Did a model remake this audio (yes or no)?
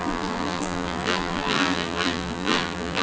yes